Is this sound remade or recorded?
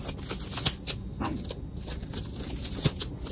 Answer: recorded